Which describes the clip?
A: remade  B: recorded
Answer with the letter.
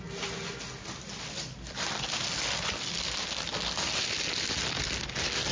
B